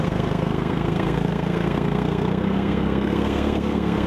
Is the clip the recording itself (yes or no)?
no